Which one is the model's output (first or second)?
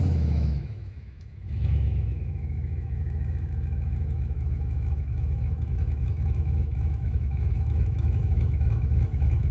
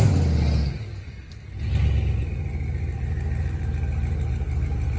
first